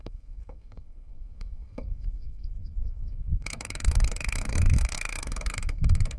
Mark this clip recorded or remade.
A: remade